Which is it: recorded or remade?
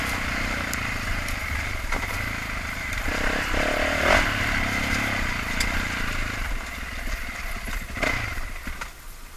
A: recorded